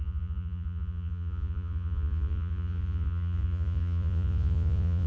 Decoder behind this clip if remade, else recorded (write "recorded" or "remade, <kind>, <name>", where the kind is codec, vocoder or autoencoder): remade, vocoder, Vocos